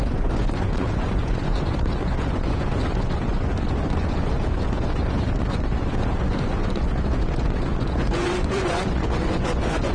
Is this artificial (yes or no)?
yes